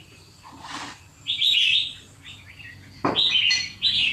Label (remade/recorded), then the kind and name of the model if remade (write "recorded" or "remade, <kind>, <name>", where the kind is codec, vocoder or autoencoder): recorded